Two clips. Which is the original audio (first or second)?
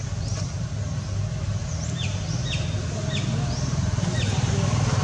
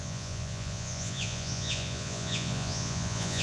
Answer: first